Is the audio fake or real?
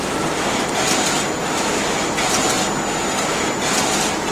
real